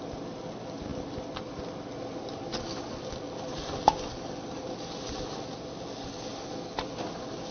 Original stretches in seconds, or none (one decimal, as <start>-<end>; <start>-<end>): 0.0-7.5